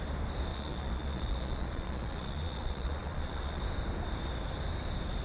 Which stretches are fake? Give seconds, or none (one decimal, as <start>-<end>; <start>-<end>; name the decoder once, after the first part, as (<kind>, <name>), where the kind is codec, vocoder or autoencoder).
0.5-3.6 (vocoder, Vocos)